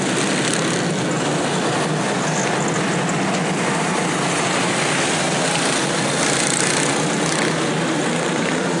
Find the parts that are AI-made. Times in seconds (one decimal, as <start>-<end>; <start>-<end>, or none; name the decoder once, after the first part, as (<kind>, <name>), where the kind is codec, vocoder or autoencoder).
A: 8.0-8.8 (vocoder, BigVGAN v2)